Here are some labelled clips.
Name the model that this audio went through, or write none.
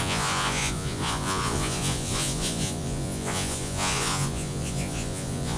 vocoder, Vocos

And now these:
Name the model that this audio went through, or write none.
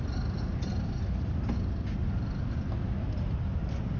none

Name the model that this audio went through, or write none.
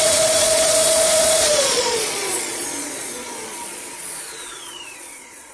vocoder, Vocos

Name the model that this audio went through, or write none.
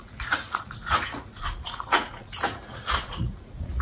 vocoder, Vocos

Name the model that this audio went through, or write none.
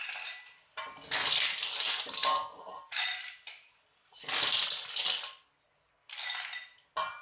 none